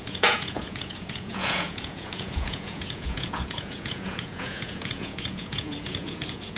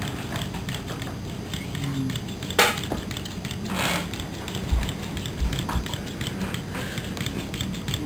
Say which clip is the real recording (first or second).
second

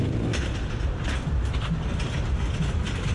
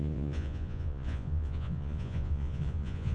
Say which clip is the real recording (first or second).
first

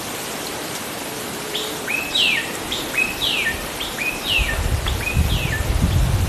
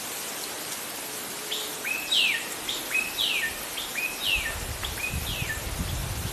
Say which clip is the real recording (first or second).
second